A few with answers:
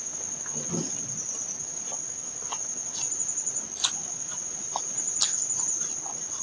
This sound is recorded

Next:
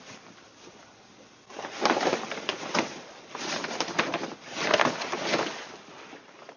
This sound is recorded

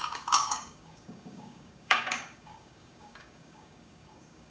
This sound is remade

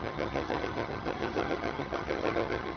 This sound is remade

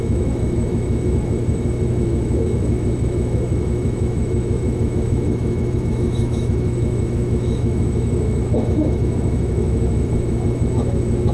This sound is remade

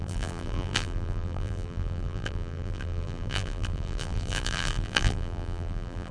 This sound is remade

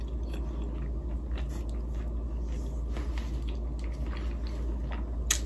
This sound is recorded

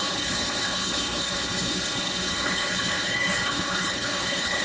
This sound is remade